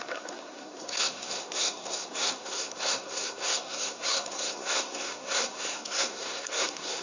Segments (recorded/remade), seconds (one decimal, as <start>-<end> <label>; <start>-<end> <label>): 0.0-7.0 remade